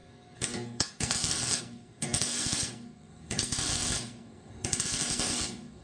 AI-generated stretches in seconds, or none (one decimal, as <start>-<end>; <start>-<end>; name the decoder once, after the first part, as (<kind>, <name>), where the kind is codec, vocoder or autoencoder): 0.0-5.8 (codec, SNAC)